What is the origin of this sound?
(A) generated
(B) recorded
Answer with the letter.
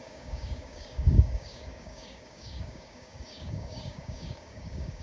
A